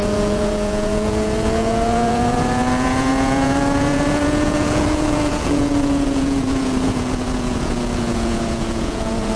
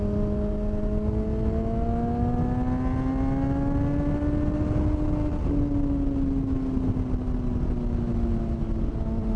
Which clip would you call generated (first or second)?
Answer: first